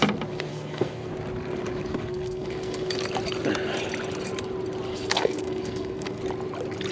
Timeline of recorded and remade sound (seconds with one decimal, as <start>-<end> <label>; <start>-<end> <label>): 0.0-0.5 recorded; 0.5-1.1 remade; 1.1-1.9 recorded; 1.9-2.9 remade; 2.9-4.9 recorded; 4.9-6.2 remade; 6.2-6.9 recorded